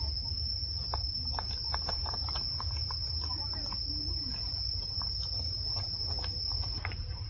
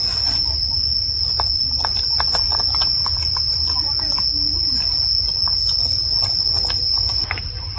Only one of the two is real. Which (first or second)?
second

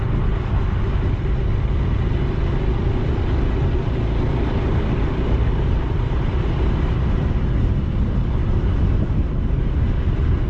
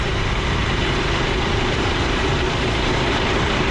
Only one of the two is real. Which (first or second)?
first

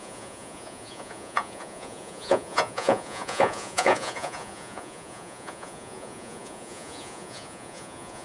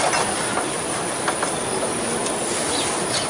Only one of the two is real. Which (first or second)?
second